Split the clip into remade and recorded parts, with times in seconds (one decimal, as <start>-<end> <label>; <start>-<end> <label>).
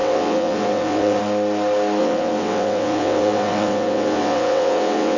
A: 0.0-1.2 remade; 1.2-2.0 recorded; 2.0-5.2 remade